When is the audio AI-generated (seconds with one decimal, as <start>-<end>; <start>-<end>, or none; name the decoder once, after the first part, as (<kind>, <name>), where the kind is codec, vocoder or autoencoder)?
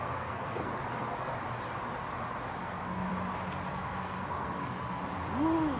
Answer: 0.0-1.3 (codec, SNAC); 2.6-3.1; 3.7-5.0